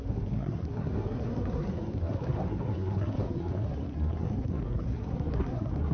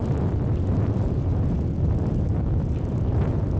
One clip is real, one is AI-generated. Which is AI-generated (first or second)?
first